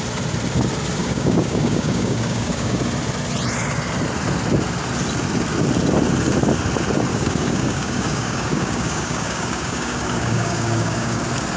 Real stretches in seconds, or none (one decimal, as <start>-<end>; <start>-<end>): 0.0-1.0; 2.8-7.1; 11.2-11.6